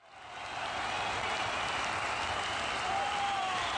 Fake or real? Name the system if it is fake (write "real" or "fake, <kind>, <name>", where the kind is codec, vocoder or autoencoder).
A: real